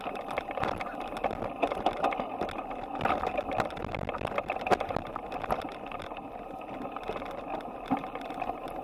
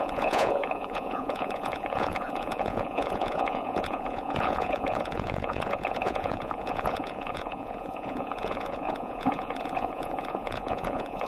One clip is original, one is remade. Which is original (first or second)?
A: first